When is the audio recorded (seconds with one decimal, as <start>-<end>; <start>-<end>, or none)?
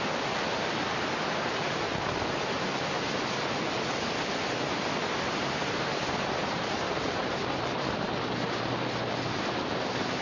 0.0-5.4